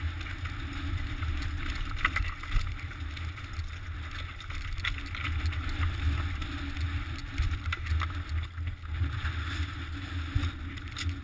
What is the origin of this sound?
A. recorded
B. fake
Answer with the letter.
A